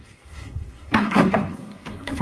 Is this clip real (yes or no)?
no